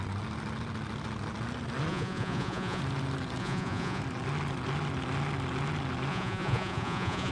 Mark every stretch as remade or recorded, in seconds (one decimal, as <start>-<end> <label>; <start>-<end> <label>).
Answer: 0.0-1.9 recorded; 1.9-2.8 remade; 2.8-3.4 recorded; 3.4-4.0 remade; 4.0-6.1 recorded; 6.1-7.3 remade